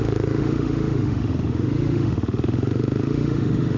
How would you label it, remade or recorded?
remade